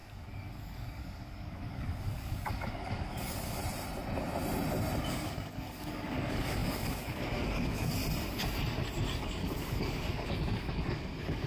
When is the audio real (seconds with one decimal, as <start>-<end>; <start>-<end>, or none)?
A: 3.6-5.1; 8.0-9.2